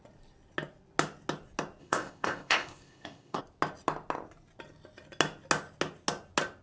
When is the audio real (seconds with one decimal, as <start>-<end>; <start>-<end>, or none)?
0.0-1.8; 3.4-6.6